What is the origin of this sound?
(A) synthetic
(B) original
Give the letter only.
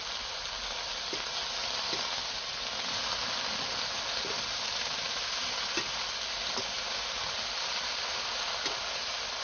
B